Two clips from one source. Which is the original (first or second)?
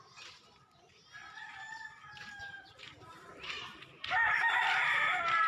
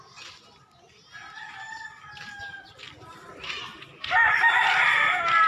second